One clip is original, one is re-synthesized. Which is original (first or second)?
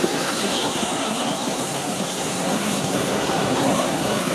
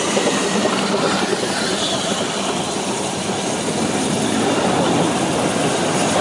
second